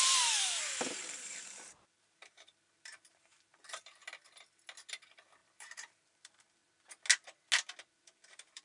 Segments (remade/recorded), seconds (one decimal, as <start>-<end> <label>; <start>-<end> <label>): 0.0-4.0 remade; 4.0-4.9 recorded; 4.9-6.6 remade; 6.6-7.9 recorded; 7.9-8.6 remade